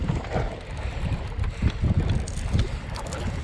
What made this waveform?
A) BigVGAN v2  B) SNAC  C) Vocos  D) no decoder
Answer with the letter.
D